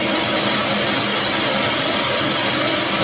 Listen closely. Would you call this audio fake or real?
real